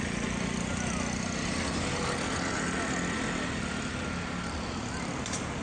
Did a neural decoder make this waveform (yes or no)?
no